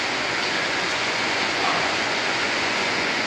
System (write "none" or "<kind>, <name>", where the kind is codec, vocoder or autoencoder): vocoder, Vocos